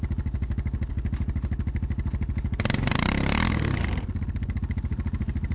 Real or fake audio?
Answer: real